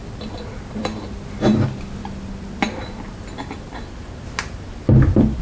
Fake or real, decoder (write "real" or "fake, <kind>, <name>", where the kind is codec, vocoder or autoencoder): real